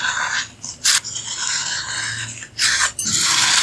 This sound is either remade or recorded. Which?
recorded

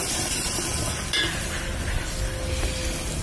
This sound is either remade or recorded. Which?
recorded